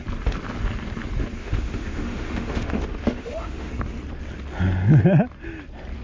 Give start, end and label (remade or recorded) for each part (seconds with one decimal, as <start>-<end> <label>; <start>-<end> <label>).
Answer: 0.0-1.4 recorded; 1.4-3.7 remade; 3.7-6.0 recorded